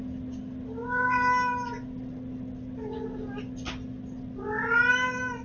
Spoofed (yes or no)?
no